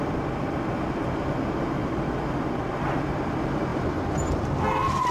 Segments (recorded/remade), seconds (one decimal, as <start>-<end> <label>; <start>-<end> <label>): 0.0-1.8 recorded; 1.8-2.7 remade; 2.7-5.1 recorded